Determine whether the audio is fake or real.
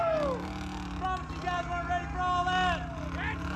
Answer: real